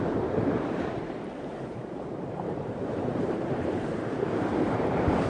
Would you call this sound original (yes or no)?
no